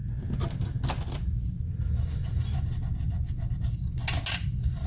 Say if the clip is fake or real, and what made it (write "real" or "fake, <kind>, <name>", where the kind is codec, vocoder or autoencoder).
real